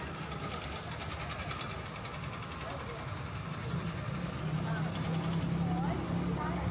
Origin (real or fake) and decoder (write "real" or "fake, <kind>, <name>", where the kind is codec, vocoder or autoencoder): real